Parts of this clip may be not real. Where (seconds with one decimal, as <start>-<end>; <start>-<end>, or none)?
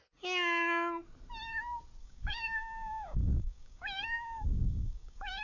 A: 2.0-5.4